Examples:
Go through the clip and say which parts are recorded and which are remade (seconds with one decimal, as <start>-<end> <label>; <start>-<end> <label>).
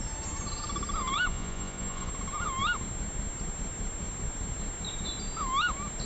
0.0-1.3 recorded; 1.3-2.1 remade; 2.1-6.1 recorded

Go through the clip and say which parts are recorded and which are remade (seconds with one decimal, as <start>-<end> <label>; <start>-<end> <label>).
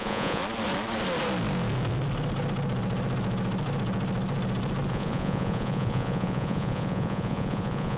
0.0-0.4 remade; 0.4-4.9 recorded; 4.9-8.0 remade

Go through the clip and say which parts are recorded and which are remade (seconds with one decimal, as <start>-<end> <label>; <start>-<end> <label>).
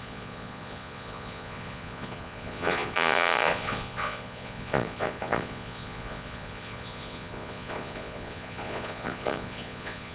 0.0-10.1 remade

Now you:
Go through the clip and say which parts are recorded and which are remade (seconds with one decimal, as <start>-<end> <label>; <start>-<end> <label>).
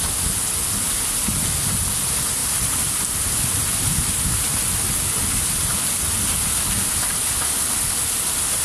0.0-8.6 recorded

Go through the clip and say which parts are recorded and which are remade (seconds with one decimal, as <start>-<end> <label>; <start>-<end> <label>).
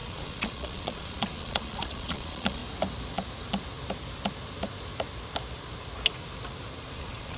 0.0-2.6 remade; 2.6-6.9 recorded; 6.9-7.4 remade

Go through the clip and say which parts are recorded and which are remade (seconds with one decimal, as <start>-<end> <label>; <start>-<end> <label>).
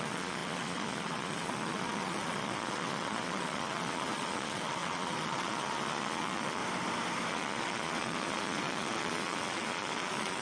0.0-6.6 remade; 6.6-7.3 recorded; 7.3-10.4 remade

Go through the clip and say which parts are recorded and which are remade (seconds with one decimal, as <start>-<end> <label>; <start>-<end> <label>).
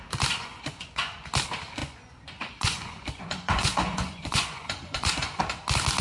0.0-0.4 recorded; 0.4-1.1 remade; 1.1-1.8 recorded; 1.8-5.4 remade; 5.4-6.0 recorded